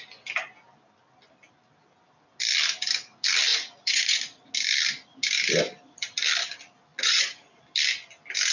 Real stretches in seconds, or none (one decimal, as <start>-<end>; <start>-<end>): 0.0-3.5; 4.5-6.9; 7.6-8.5